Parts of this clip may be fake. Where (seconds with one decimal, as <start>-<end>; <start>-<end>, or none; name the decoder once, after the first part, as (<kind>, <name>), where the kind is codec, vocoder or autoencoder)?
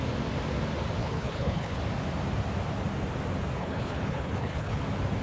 1.0-1.8 (codec, HILCodec); 3.6-4.8